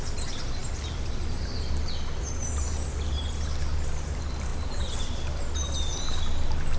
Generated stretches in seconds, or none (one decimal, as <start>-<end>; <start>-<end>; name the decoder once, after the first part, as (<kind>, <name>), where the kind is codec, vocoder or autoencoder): none